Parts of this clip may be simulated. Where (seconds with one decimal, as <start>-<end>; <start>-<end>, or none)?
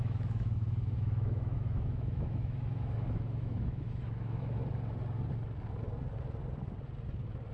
0.0-4.6